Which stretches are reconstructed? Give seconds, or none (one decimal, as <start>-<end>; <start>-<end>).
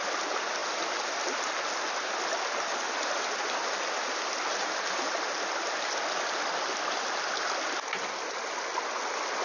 none